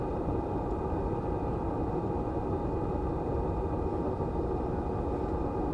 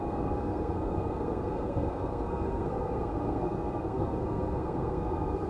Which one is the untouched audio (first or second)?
first